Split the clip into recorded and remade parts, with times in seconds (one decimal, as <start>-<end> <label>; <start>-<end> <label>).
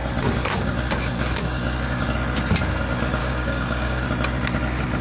0.0-3.2 recorded; 3.2-4.1 remade; 4.1-5.0 recorded